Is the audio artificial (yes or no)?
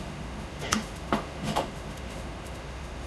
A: yes